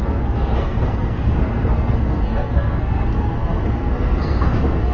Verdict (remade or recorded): remade